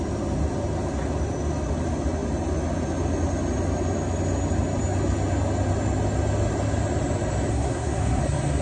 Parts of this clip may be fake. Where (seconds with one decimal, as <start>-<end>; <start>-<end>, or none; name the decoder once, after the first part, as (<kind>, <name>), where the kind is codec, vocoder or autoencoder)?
7.5-8.2 (codec, SNAC)